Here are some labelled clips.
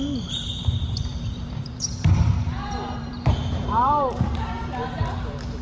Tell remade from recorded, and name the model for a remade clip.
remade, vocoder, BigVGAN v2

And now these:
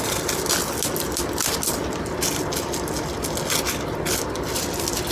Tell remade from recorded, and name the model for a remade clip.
recorded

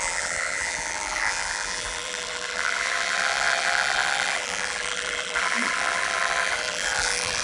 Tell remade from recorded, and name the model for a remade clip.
remade, vocoder, BigVGAN v2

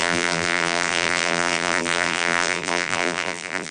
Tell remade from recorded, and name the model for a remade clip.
remade, vocoder, BigVGAN v2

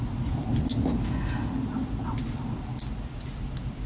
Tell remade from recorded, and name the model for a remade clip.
recorded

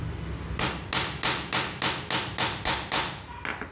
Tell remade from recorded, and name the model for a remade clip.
recorded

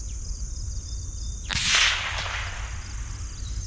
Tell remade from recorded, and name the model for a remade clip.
recorded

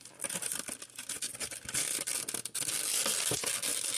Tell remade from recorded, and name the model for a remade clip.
remade, vocoder, BigVGAN v2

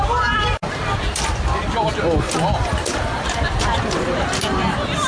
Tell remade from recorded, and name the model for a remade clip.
remade, vocoder, BigVGAN v2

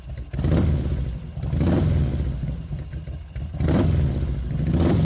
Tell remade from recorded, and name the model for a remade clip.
recorded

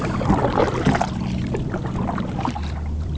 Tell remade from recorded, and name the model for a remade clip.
remade, vocoder, BigVGAN v2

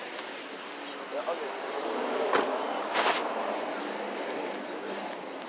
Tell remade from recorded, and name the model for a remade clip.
recorded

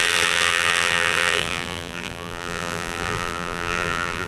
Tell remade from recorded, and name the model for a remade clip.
remade, vocoder, BigVGAN v2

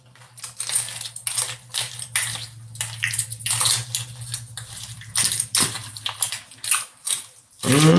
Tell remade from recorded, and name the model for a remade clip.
recorded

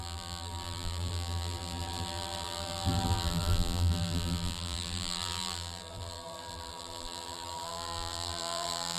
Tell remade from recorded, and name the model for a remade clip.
remade, vocoder, BigVGAN v2